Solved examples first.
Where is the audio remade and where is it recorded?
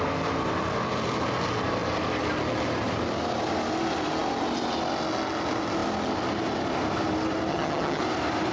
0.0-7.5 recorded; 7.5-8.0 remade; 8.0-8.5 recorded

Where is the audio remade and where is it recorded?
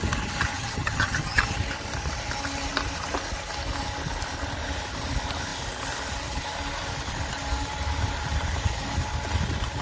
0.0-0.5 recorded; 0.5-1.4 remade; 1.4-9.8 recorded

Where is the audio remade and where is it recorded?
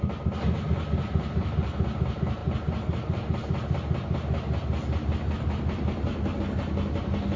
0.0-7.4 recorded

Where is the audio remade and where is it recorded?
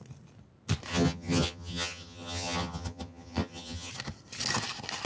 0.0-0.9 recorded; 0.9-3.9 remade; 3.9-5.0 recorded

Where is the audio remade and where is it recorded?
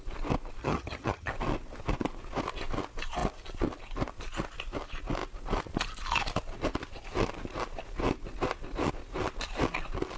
0.0-0.6 recorded; 0.6-1.3 remade; 1.3-10.2 recorded